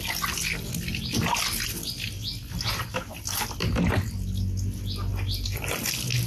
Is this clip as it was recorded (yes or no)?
yes